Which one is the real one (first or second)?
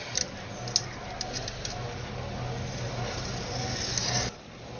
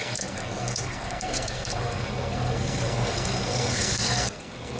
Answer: first